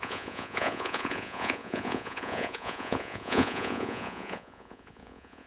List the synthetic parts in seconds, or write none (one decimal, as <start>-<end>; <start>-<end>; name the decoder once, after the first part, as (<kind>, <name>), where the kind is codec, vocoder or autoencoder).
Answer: 0.0-5.5 (vocoder, Vocos)